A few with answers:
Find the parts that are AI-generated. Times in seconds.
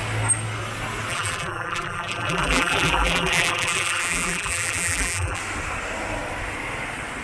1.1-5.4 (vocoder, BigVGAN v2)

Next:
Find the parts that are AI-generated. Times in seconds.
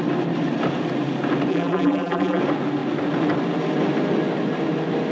1.5-2.4 (vocoder, BigVGAN v2)